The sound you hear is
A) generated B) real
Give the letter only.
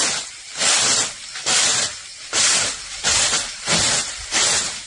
B